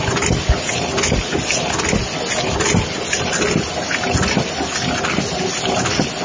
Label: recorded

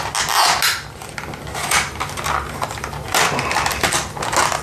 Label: recorded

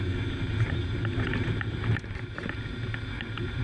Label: remade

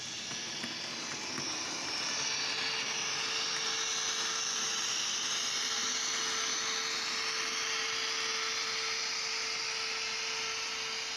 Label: recorded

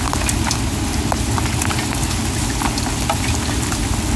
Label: recorded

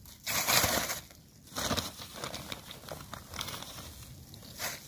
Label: recorded